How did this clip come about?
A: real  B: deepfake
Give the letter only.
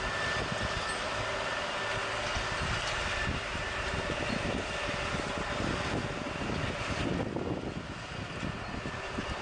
A